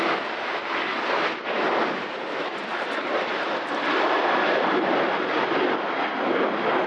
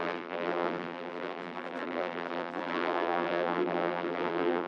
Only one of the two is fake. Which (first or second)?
second